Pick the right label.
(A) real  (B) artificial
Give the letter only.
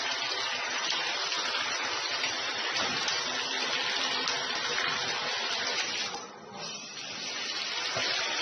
B